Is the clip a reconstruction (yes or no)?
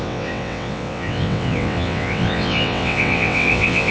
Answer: yes